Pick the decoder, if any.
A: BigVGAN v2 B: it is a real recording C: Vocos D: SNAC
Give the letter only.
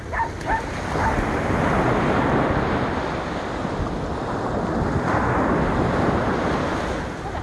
B